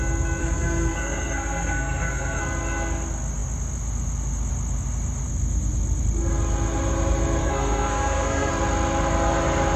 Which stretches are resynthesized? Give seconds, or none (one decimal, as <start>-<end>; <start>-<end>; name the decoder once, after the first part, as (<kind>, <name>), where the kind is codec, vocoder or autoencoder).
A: 0.4-2.4 (codec, SNAC); 7.4-8.5